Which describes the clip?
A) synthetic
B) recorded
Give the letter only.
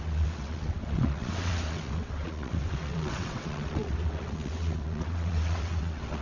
A